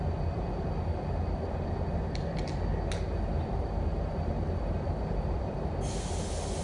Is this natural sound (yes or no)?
yes